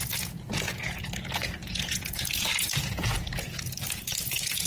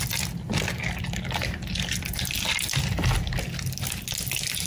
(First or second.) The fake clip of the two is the first